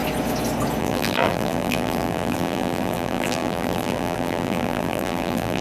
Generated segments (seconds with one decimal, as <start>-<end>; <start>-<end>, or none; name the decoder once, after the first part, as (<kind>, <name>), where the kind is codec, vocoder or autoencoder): 0.8-5.6 (vocoder, BigVGAN v2)